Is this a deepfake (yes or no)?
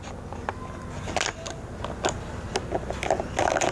no